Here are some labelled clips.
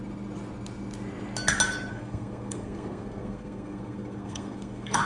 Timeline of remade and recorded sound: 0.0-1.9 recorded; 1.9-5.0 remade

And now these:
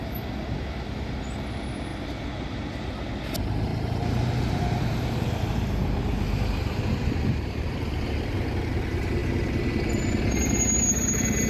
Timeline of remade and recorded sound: 0.0-1.9 recorded; 1.9-2.9 remade; 2.9-3.7 recorded; 3.7-8.2 remade; 8.2-11.5 recorded

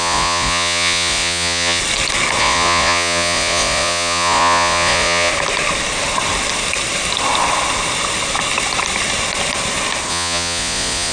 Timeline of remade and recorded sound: 0.0-1.8 remade; 1.8-2.4 recorded; 2.4-5.3 remade; 5.3-10.1 recorded; 10.1-11.1 remade

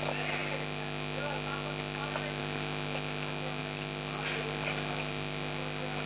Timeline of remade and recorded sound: 0.0-6.1 recorded

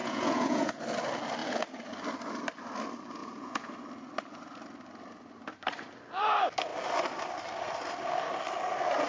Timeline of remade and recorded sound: 0.0-0.8 remade; 0.8-3.2 recorded; 3.2-3.7 remade; 3.7-9.1 recorded

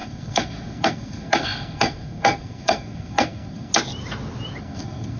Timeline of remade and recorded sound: 0.0-3.7 remade; 3.7-4.6 recorded; 4.6-5.2 remade

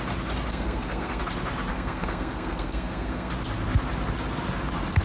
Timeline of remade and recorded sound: 0.0-0.5 recorded; 0.5-1.2 remade; 1.2-1.7 recorded; 1.7-3.3 remade; 3.3-5.0 recorded

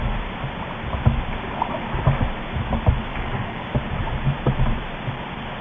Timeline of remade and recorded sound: 0.0-3.1 recorded; 3.1-3.7 remade; 3.7-5.6 recorded